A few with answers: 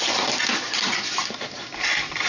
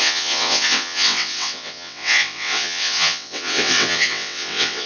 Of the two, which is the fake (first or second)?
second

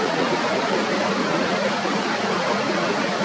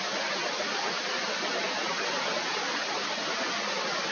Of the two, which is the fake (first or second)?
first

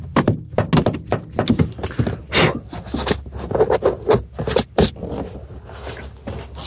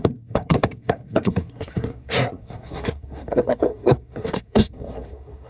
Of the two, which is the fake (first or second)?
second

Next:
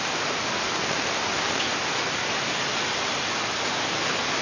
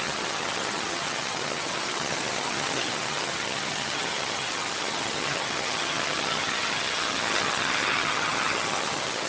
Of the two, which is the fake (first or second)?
second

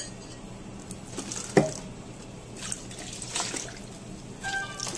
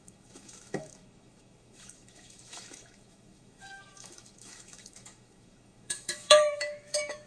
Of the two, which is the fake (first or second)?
second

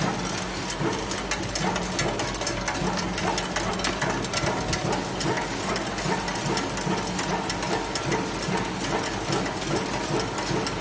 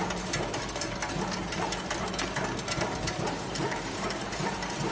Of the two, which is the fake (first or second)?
second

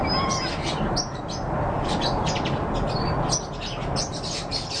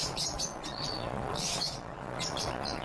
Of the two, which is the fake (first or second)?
second